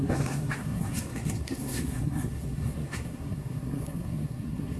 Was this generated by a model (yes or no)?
yes